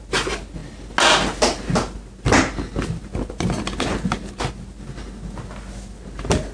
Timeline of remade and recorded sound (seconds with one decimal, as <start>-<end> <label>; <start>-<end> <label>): 0.0-6.5 recorded